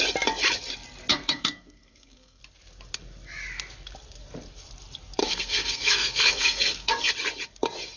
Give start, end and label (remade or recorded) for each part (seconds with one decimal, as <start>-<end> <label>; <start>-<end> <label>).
0.0-1.1 recorded; 1.1-2.4 remade; 2.4-5.2 recorded; 5.2-7.1 remade; 7.1-8.0 recorded